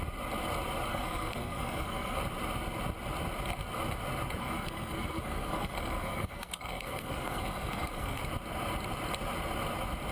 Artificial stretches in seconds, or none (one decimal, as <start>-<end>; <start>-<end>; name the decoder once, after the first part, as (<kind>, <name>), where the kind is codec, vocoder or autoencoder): 0.9-2.2 (codec, SNAC); 4.4-8.2